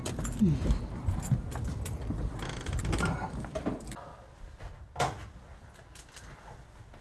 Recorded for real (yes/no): yes